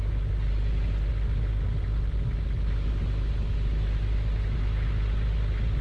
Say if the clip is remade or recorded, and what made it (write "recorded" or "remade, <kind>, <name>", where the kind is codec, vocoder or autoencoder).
recorded